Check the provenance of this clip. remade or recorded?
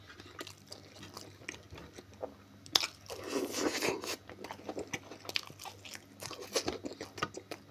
recorded